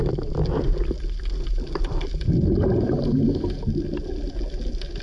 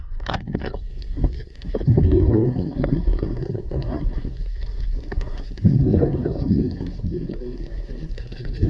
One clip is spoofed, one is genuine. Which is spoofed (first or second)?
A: second